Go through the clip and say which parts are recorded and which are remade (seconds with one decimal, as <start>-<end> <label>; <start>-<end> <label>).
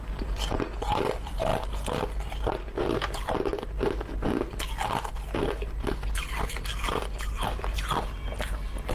0.0-8.9 recorded